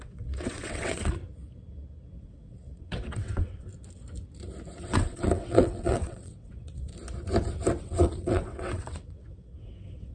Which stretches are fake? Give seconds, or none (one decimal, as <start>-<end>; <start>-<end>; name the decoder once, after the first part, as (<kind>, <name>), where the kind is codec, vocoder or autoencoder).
0.0-1.2 (vocoder, WaveNeXt); 2.2-3.7; 4.8-6.9; 7.8-10.1

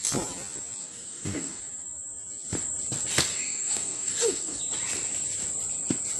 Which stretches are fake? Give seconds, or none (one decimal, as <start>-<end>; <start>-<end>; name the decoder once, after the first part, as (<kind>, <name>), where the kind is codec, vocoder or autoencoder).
0.8-1.6 (codec, DAC); 3.3-4.6

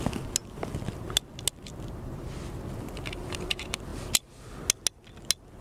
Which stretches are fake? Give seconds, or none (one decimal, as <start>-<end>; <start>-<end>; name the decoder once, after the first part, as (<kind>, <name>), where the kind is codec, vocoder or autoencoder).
none

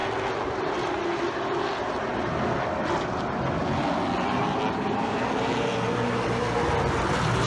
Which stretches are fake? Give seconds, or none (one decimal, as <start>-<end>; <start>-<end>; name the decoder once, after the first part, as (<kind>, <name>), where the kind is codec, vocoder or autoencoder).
none

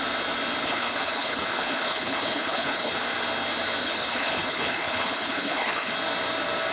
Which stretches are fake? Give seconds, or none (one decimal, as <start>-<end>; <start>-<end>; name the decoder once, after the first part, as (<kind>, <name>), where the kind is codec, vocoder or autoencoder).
0.6-3.0 (codec, HILCodec); 3.8-5.9

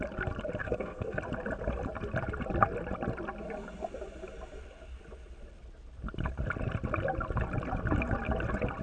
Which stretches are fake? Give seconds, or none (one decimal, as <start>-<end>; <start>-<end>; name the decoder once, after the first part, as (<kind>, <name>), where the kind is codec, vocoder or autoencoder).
0.6-1.2 (codec, SNAC)